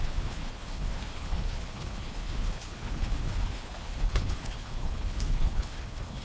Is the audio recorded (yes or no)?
no